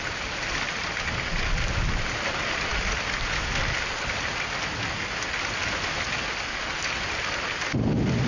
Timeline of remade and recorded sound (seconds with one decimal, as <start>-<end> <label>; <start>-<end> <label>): 0.0-8.3 recorded